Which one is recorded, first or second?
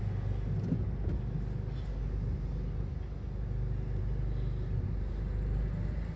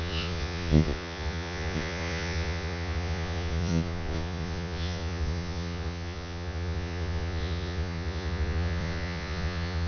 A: first